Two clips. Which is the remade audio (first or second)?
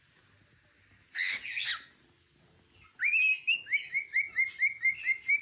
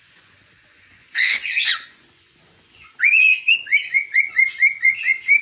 second